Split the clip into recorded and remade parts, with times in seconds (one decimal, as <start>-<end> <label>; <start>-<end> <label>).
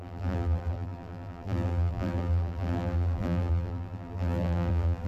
0.0-5.1 remade